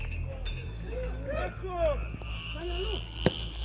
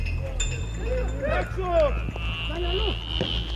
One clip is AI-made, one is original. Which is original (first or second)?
second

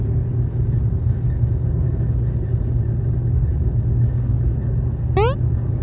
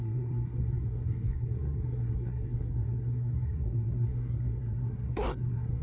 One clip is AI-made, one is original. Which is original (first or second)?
first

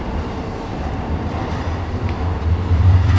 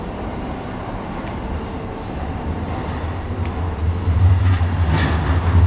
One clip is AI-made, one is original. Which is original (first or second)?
second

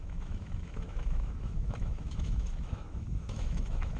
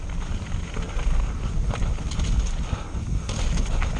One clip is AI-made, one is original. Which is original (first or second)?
second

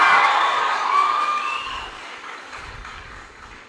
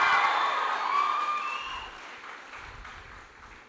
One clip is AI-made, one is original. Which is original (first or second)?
second